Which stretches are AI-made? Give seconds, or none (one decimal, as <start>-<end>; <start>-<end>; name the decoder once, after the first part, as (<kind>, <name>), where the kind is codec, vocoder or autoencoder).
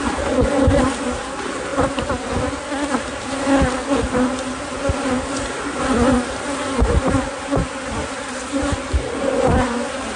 7.6-8.6 (vocoder, BigVGAN v2)